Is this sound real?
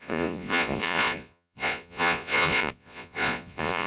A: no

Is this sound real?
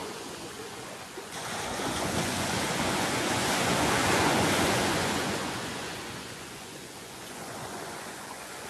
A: no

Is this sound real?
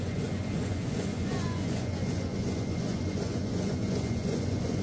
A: no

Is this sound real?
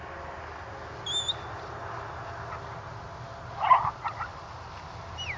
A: yes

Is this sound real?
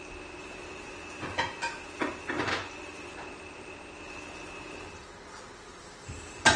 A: yes